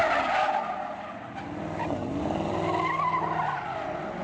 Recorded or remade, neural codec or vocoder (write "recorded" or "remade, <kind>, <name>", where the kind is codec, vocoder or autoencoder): recorded